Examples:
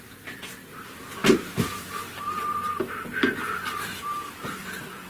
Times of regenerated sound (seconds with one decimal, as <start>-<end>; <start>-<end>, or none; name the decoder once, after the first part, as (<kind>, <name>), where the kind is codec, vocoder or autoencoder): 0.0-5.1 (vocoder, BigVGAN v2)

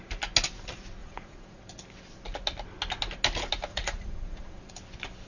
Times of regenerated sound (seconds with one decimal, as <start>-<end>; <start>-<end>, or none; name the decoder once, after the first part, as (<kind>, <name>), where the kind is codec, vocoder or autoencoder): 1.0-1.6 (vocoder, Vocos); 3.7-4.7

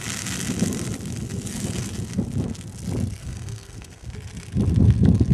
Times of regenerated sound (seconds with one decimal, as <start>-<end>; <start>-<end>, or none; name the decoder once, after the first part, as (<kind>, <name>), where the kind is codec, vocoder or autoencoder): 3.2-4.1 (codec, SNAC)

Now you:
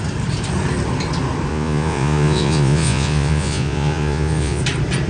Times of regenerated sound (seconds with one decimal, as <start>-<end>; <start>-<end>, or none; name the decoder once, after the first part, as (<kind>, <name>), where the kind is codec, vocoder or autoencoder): 1.5-4.6 (vocoder, Vocos)

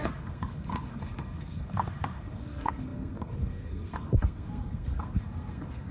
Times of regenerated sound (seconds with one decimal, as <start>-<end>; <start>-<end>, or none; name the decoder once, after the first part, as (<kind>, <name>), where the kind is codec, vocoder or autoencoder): 0.0-5.9 (codec, SNAC)

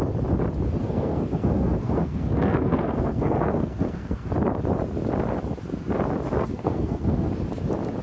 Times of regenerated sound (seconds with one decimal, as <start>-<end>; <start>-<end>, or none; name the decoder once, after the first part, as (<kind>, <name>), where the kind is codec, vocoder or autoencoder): 0.8-4.3 (codec, SNAC); 6.4-7.3

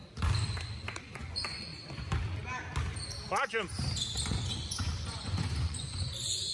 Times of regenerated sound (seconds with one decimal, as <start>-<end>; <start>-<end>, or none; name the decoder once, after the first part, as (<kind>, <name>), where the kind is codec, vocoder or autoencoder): 1.0-1.7 (vocoder, Vocos); 4.0-6.5